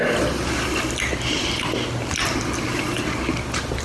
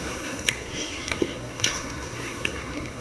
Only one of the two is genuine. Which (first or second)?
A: first